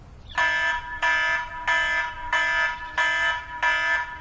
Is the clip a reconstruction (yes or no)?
no